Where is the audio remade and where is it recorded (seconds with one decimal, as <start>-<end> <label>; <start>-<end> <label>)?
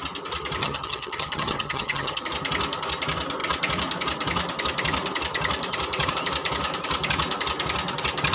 0.0-0.6 recorded; 0.6-2.2 remade; 2.2-8.3 recorded